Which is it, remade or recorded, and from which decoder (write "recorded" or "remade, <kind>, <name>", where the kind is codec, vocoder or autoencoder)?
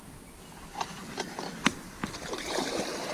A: remade, vocoder, BigVGAN v2